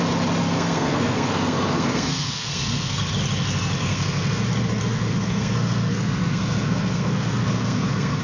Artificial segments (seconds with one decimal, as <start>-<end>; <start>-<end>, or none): 0.4-3.1; 3.8-4.4; 4.9-8.2